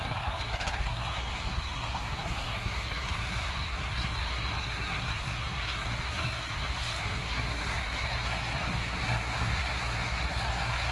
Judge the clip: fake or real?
fake